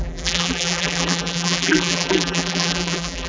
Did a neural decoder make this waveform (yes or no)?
yes